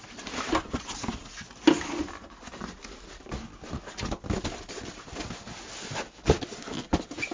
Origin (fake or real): real